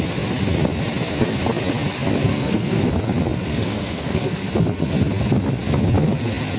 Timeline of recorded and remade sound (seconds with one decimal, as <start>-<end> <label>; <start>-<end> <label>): 0.0-2.3 recorded; 2.3-2.9 remade; 2.9-3.5 recorded; 3.5-4.5 remade; 4.5-6.6 recorded